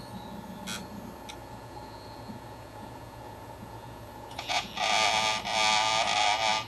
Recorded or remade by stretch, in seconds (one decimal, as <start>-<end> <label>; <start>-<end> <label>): 0.0-1.4 recorded; 1.4-4.7 remade; 4.7-6.7 recorded

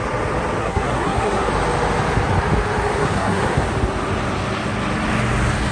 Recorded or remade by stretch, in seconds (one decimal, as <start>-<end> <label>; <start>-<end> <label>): 0.0-0.6 recorded; 0.6-1.5 remade; 1.5-3.0 recorded; 3.0-3.6 remade; 3.6-5.7 recorded

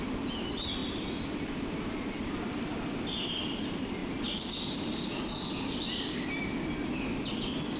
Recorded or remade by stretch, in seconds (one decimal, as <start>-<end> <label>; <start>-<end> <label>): 0.0-7.8 recorded